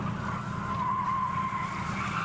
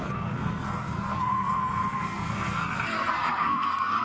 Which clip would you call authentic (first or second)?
first